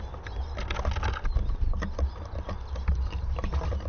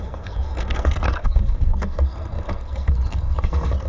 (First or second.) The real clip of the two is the first